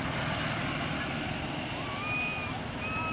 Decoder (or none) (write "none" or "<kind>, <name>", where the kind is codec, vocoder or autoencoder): none